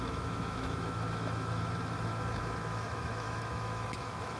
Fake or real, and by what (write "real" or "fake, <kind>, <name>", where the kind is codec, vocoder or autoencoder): fake, autoencoder, DAC-VAE